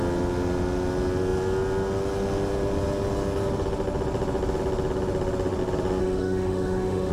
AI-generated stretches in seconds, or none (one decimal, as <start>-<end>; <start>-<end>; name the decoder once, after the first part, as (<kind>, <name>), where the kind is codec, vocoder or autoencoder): 6.0-7.1 (autoencoder, DAC-VAE)